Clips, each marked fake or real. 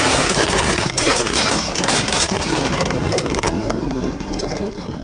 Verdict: fake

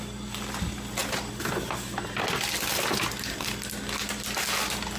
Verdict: real